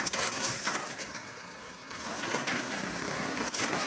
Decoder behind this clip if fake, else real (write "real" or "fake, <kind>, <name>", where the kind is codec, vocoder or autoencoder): fake, codec, SNAC